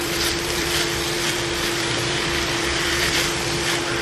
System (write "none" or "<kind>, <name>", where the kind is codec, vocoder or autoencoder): vocoder, BigVGAN v2